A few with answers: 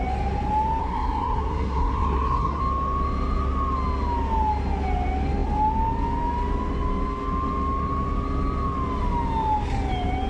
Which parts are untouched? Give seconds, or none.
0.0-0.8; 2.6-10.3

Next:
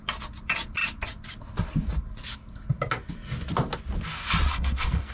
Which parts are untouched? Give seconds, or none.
0.0-4.5

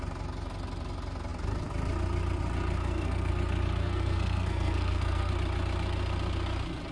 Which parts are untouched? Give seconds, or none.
0.0-2.8; 3.3-3.8; 5.3-6.9

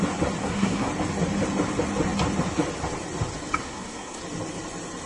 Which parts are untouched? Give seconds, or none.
0.0-0.4; 0.9-3.6; 4.2-5.1

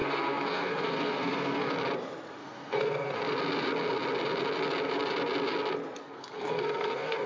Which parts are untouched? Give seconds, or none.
1.7-2.4; 3.2-6.0

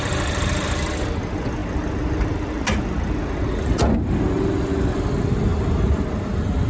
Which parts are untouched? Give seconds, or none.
0.0-6.7